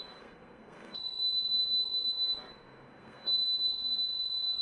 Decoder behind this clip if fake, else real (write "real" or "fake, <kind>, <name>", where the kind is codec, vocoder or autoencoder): fake, codec, SNAC